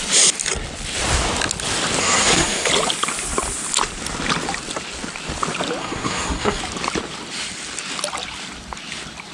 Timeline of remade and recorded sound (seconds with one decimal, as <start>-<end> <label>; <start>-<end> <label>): 0.0-2.0 recorded; 2.0-2.7 remade; 2.7-5.8 recorded; 5.8-6.6 remade; 6.6-9.3 recorded